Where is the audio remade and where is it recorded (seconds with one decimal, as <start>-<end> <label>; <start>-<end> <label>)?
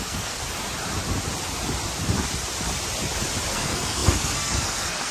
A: 0.0-0.4 remade; 0.4-3.5 recorded; 3.5-5.1 remade